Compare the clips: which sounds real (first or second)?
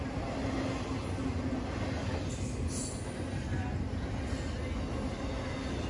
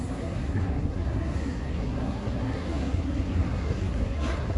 first